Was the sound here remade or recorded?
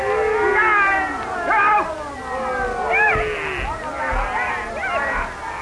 recorded